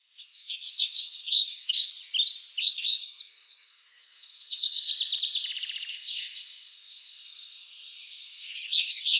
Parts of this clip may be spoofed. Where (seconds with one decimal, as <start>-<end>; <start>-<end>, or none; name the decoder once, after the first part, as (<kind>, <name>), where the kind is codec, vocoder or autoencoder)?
0.0-1.9 (codec, SNAC); 2.6-4.9; 5.9-9.2